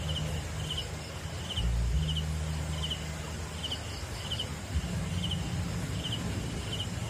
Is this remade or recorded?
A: recorded